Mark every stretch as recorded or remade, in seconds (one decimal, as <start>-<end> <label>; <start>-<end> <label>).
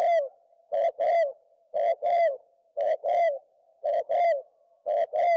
0.0-1.9 recorded; 1.9-4.1 remade; 4.1-5.4 recorded